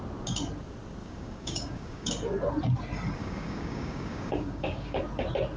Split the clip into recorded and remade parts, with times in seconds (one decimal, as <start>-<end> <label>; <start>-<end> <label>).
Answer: 0.0-1.0 recorded; 1.0-2.1 remade; 2.1-3.2 recorded; 3.2-5.0 remade; 5.0-5.6 recorded